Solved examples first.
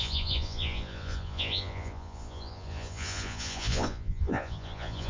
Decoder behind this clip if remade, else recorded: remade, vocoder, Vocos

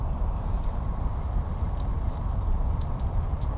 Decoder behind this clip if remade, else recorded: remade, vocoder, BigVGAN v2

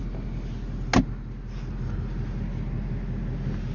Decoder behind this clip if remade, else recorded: recorded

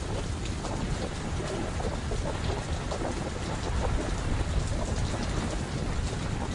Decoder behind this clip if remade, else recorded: recorded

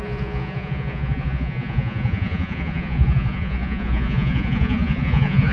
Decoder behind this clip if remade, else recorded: remade, vocoder, Vocos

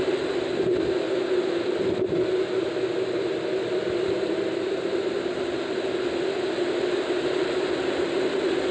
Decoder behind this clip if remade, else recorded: recorded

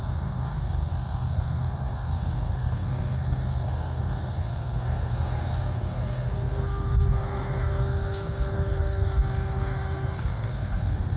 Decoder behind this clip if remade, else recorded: remade, codec, SNAC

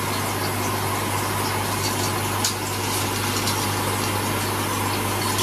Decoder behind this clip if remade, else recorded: recorded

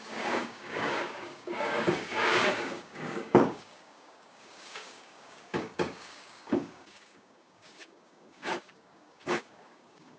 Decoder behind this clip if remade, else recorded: remade, codec, DAC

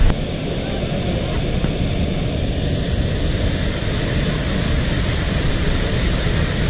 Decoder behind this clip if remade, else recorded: recorded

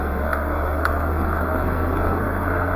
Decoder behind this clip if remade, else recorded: remade, codec, SNAC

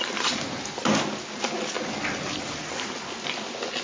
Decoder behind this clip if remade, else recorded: recorded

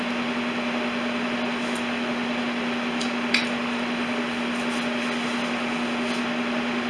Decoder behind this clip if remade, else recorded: recorded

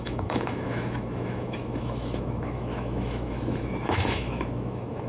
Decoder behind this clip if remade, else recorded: remade, autoencoder, DAC-VAE